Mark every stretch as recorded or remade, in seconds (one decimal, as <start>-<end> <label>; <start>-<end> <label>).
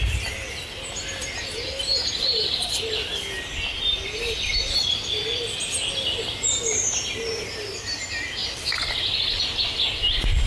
0.0-10.5 recorded